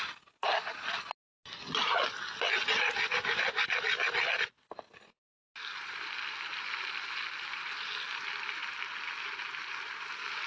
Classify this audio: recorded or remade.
recorded